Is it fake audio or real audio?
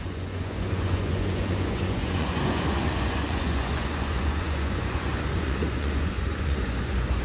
fake